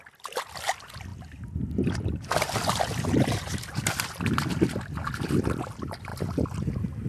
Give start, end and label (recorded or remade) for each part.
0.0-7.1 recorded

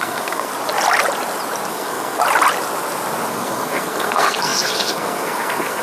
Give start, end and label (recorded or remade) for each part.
0.0-0.5 remade; 0.5-1.7 recorded; 1.7-2.2 remade; 2.2-3.3 recorded; 3.3-5.8 remade

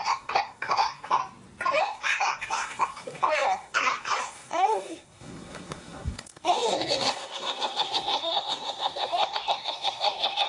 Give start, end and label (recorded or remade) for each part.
0.0-1.2 remade; 1.2-1.8 recorded; 1.8-10.5 remade

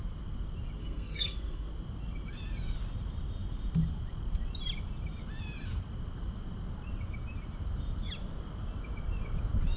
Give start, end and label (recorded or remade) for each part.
0.0-0.8 recorded; 0.8-1.7 remade; 1.7-9.8 recorded

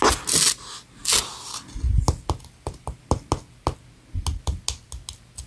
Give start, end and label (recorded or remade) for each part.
0.0-5.5 recorded

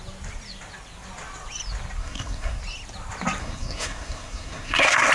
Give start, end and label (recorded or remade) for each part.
0.0-2.0 recorded; 2.0-2.6 remade; 2.6-3.4 recorded; 3.4-5.1 remade

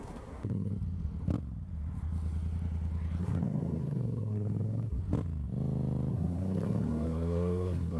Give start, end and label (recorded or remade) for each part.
0.0-0.7 remade; 0.7-3.2 recorded; 3.2-5.0 remade; 5.0-6.1 recorded; 6.1-8.0 remade

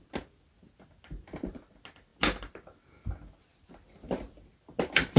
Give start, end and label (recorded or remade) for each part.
0.0-5.2 recorded